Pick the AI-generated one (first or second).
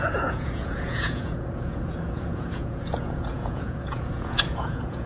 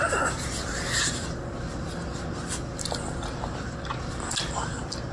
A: first